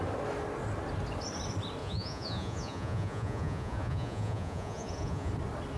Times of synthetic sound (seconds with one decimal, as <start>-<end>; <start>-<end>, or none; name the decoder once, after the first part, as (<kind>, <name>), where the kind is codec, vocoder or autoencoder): 1.8-5.3 (vocoder, Vocos)